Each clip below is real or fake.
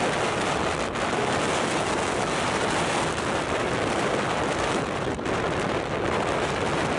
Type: real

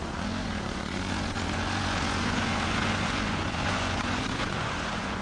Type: fake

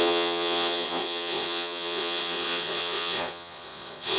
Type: fake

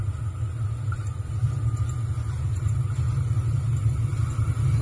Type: real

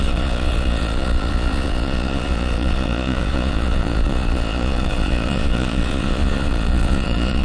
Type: fake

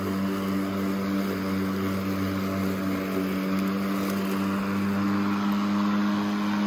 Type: real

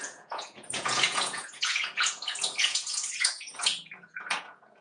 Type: fake